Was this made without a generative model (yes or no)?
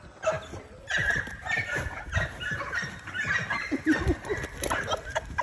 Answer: yes